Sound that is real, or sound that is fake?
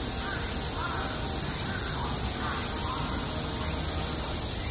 real